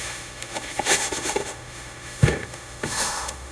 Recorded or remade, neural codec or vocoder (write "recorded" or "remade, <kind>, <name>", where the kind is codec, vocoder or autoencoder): remade, autoencoder, DAC-VAE